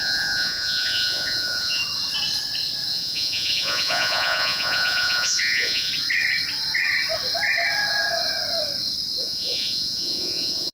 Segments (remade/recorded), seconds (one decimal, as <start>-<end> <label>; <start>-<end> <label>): 0.0-1.8 remade; 1.8-2.9 recorded; 2.9-5.9 remade; 5.9-9.2 recorded; 9.2-10.7 remade